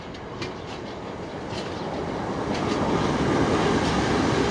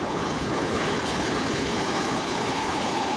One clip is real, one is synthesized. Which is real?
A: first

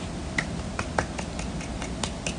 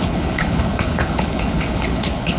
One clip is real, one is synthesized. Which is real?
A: first